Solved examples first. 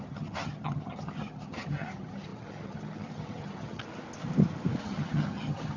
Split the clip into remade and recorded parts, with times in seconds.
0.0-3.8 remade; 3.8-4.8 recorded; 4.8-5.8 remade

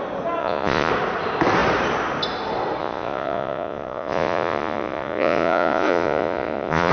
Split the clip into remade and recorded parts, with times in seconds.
0.0-0.4 recorded; 0.4-0.9 remade; 0.9-2.8 recorded; 2.8-6.9 remade

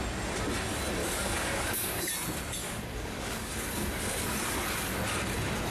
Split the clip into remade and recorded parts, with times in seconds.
0.0-1.0 recorded; 1.0-2.1 remade; 2.1-2.6 recorded; 2.6-3.5 remade; 3.5-5.7 recorded

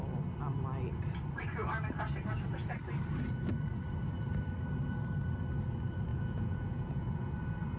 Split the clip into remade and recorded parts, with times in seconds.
0.0-6.1 recorded; 6.1-7.3 remade; 7.3-7.8 recorded

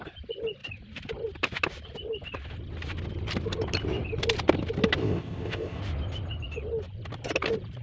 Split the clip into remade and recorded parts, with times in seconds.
0.0-5.0 recorded; 5.0-5.8 remade; 5.8-7.8 recorded

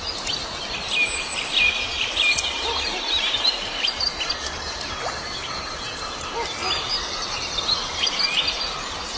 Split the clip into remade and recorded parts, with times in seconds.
0.0-6.6 recorded; 6.6-8.2 remade; 8.2-9.2 recorded

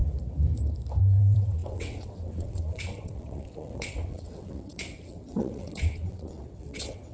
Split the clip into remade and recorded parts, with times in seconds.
0.0-1.2 recorded; 1.2-7.1 remade